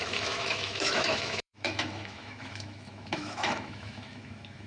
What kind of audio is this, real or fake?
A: fake